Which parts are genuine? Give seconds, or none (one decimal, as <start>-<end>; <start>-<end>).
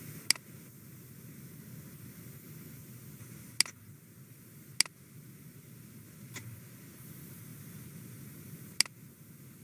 0.0-9.6